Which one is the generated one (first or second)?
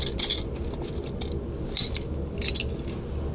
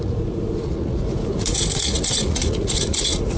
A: second